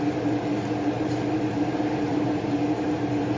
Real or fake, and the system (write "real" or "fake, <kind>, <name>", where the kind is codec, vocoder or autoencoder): fake, vocoder, BigVGAN v2